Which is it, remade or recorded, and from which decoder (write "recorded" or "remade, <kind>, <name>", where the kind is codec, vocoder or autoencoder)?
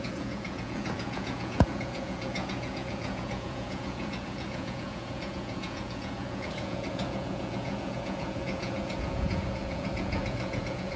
remade, vocoder, Vocos